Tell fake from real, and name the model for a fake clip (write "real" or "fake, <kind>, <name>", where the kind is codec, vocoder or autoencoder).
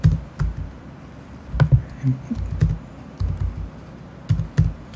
real